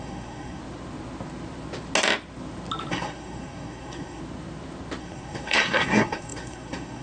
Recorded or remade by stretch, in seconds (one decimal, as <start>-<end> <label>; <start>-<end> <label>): 0.0-0.6 remade; 0.6-2.9 recorded; 2.9-4.2 remade; 4.2-5.0 recorded; 5.0-7.0 remade